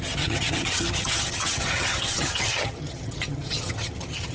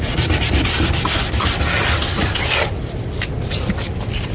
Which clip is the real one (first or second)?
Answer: second